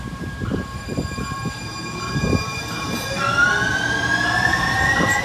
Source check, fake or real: fake